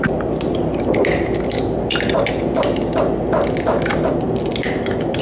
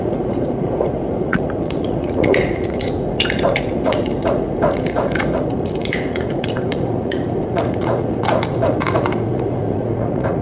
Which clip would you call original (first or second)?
first